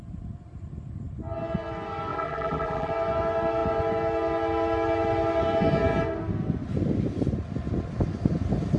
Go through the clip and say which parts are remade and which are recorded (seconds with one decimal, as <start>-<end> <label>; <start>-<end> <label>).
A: 0.0-2.1 recorded; 2.1-2.9 remade; 2.9-8.8 recorded